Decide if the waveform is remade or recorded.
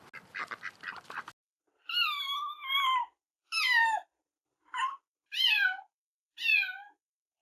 recorded